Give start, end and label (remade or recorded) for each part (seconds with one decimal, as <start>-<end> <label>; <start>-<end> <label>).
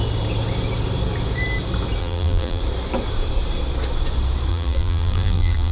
0.0-2.0 recorded; 2.0-2.6 remade; 2.6-4.5 recorded; 4.5-5.7 remade